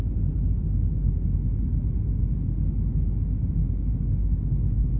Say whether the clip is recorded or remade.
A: recorded